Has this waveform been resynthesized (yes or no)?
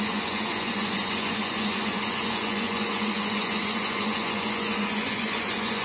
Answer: yes